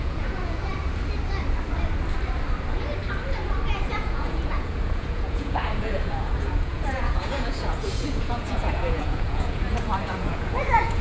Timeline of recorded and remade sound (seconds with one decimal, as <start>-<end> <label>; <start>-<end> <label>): 0.0-0.7 remade; 0.7-3.9 recorded; 3.9-11.0 remade